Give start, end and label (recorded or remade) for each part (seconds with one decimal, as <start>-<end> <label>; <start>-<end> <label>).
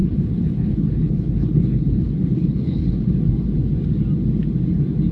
0.0-3.1 remade; 3.1-5.1 recorded